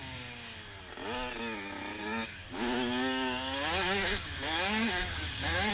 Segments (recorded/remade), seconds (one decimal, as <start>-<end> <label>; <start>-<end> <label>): 0.0-0.8 remade; 0.8-2.0 recorded; 2.0-5.7 remade